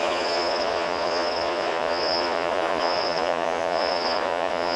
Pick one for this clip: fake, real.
fake